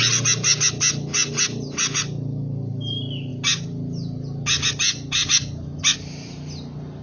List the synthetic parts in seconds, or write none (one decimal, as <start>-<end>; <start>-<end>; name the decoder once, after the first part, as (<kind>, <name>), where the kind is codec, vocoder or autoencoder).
none